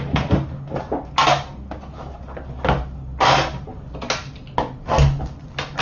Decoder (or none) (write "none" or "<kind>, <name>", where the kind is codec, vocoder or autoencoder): none